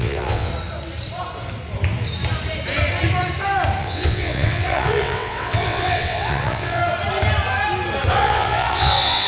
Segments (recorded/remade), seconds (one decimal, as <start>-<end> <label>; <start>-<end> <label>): 0.0-0.5 remade; 0.5-3.8 recorded; 3.8-6.8 remade; 6.8-8.1 recorded; 8.1-9.3 remade